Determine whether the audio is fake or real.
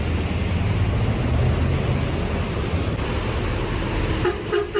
real